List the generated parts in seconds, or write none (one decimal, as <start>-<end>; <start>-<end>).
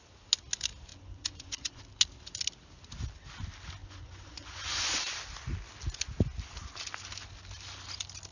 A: 0.9-1.8; 3.8-5.1